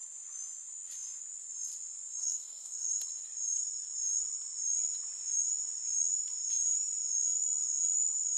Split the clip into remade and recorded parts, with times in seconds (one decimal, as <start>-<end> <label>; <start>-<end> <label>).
0.0-2.2 recorded; 2.2-2.9 remade; 2.9-8.4 recorded